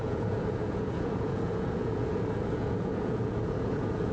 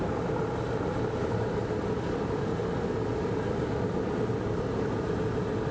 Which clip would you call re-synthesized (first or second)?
first